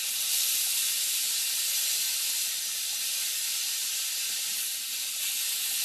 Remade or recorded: recorded